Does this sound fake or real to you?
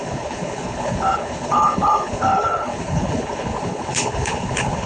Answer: fake